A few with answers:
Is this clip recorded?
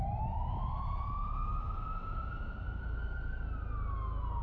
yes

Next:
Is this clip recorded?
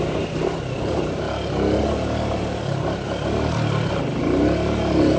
yes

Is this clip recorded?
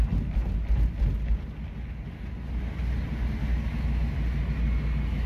yes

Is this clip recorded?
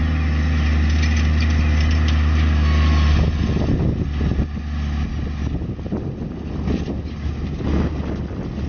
yes